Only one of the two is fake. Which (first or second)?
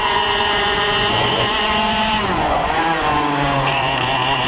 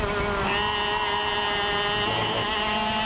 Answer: first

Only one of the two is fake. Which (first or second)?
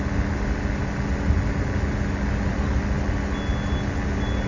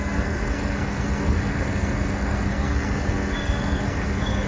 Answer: second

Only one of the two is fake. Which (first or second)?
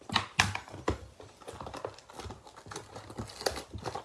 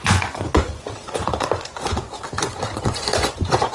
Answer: second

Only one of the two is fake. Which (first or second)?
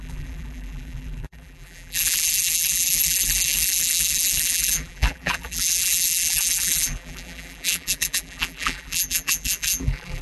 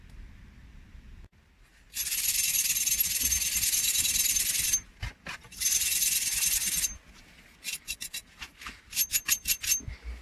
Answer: first